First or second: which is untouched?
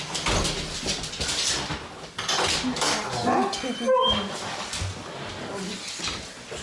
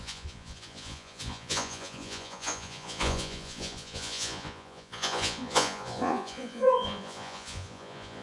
first